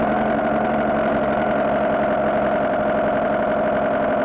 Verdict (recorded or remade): recorded